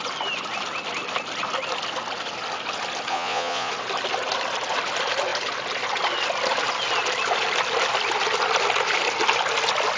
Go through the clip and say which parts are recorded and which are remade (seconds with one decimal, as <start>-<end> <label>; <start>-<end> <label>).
0.0-3.1 recorded; 3.1-3.7 remade; 3.7-10.0 recorded